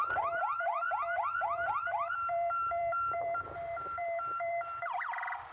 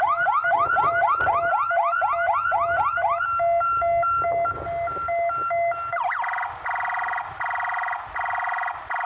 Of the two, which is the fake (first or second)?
first